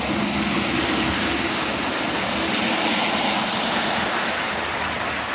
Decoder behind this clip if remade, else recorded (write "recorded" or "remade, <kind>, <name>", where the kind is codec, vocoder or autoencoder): recorded